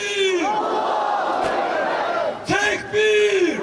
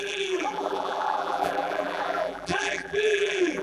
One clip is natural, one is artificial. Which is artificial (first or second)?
second